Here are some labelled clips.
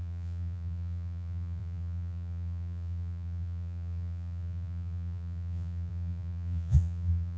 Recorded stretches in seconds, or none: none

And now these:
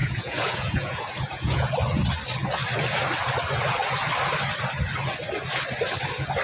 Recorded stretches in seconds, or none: 1.7-6.4

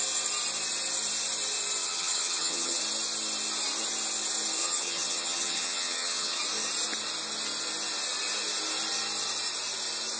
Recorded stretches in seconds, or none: 0.0-1.8; 2.8-4.6; 6.4-10.2

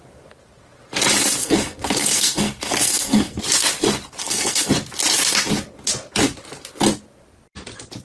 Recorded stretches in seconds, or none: 0.0-1.4; 3.4-4.2; 4.7-8.0

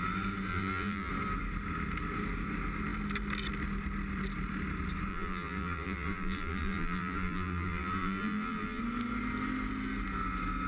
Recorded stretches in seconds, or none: 0.0-0.5; 1.1-5.1; 8.8-10.7